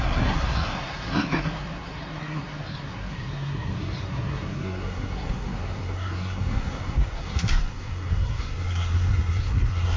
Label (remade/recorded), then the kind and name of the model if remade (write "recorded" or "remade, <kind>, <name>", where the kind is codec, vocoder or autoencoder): remade, codec, SNAC